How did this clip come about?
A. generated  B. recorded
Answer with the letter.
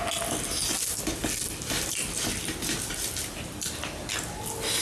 B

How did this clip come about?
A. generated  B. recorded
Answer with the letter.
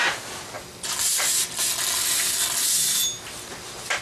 B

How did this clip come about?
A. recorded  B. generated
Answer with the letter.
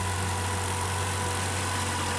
A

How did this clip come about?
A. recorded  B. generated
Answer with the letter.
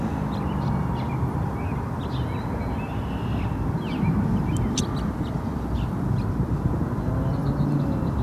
A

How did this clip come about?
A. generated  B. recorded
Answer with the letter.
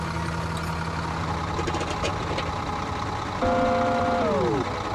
B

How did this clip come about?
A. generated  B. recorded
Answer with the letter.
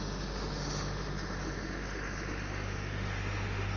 A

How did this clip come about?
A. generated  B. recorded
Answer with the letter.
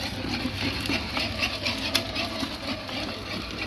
B